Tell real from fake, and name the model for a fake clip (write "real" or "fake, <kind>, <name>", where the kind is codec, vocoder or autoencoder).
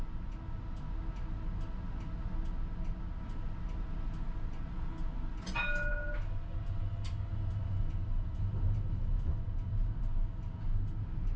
real